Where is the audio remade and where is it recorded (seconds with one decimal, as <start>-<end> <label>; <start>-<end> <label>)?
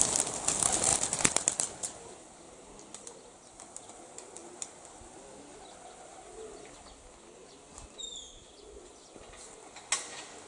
0.0-0.9 recorded; 0.9-3.8 remade; 3.8-4.4 recorded; 4.4-5.0 remade; 5.0-10.5 recorded